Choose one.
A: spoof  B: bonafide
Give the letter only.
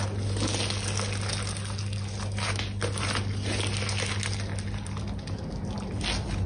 B